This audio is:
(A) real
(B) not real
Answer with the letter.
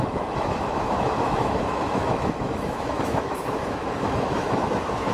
B